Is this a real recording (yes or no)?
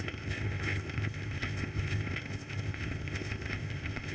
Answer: no